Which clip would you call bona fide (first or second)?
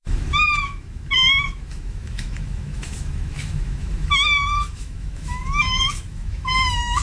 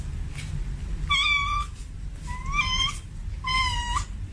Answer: second